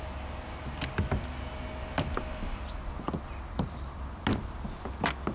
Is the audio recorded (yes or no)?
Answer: yes